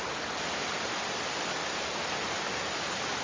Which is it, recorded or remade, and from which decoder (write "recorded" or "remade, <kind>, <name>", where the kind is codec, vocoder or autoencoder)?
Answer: recorded